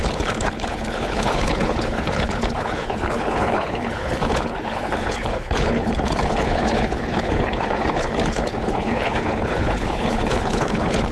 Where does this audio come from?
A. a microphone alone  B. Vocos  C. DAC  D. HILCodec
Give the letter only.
D